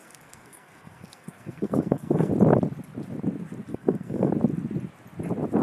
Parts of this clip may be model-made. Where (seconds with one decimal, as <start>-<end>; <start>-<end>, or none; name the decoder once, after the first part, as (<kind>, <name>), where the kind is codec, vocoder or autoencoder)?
0.0-2.3 (codec, SNAC); 3.7-4.3